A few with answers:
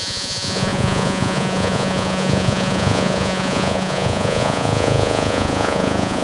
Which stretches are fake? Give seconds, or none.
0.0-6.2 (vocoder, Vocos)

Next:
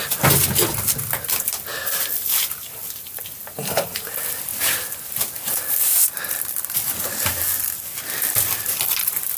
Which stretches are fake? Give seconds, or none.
3.6-4.1 (vocoder, BigVGAN v2)

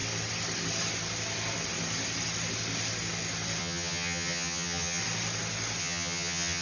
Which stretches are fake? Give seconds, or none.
3.6-5.0 (vocoder, HiFi-GAN); 5.8-6.6

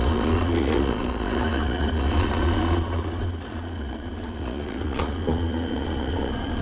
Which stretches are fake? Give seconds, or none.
0.0-6.6 (vocoder, Vocos)